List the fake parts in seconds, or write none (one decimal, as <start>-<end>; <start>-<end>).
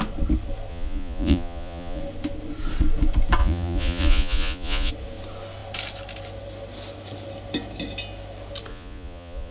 0.7-2.0; 3.4-4.9; 8.7-9.5